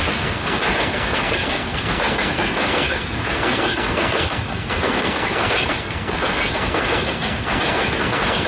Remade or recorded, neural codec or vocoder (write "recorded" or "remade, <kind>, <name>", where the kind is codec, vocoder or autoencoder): remade, codec, SNAC